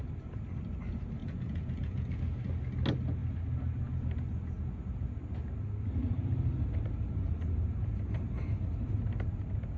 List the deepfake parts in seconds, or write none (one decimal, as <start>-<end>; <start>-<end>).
1.2-2.2